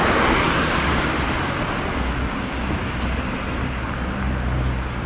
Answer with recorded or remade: recorded